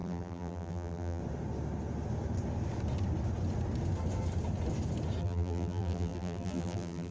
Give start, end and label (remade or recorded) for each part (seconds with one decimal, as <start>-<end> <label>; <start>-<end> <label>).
0.0-1.2 remade; 1.2-5.2 recorded; 5.2-7.1 remade